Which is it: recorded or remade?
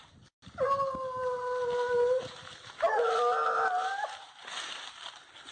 recorded